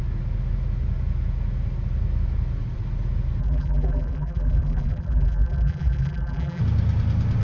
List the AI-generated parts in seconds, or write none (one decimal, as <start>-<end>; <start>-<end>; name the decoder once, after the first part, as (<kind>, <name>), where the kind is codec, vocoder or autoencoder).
3.4-6.6 (vocoder, BigVGAN v2)